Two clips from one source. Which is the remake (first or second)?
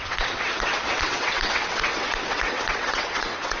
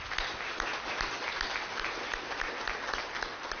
first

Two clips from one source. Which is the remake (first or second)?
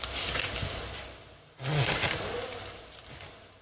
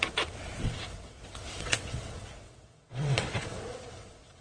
second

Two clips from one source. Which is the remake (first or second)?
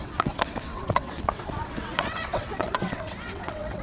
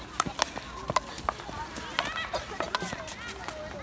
first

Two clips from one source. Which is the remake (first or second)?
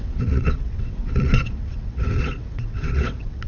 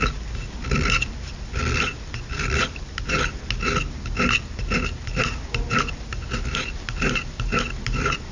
first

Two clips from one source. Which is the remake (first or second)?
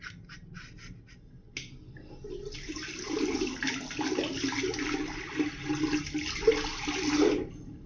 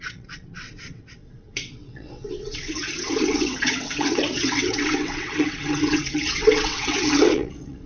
second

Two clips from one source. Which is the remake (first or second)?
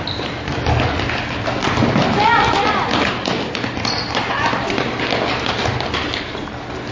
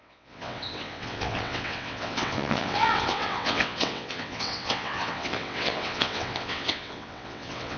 second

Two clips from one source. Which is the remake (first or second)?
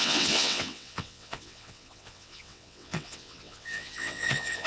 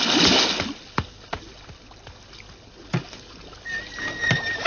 first